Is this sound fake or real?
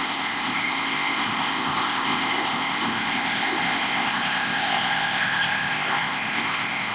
fake